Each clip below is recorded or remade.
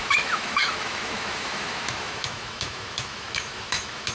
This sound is remade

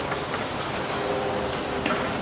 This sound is recorded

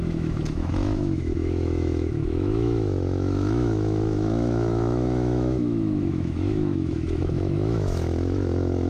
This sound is remade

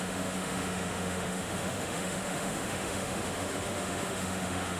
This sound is remade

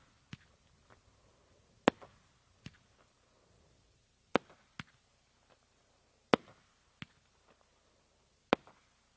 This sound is recorded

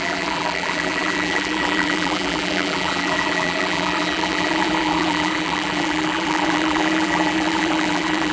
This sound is remade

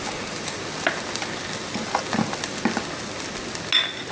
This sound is recorded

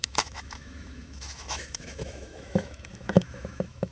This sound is remade